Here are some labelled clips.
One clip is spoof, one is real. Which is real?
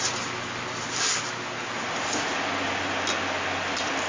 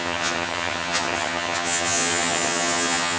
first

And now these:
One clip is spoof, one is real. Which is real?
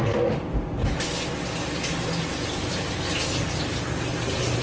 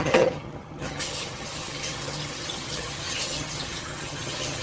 first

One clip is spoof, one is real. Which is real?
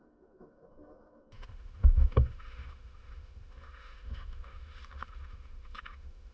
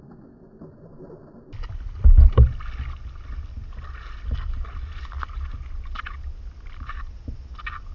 second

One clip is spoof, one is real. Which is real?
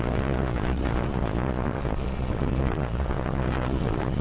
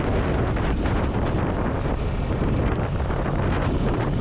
second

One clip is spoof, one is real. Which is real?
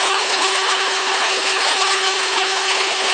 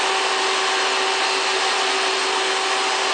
second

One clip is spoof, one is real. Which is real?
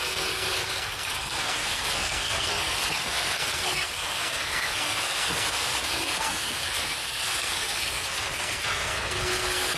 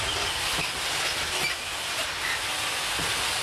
second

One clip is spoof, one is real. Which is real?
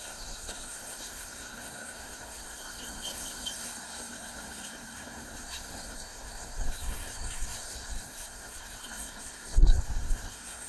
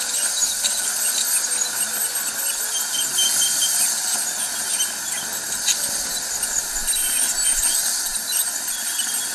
second